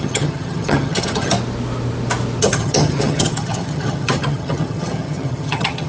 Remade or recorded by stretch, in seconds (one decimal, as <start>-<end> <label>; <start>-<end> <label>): 0.0-1.3 remade; 1.3-2.4 recorded; 2.4-5.9 remade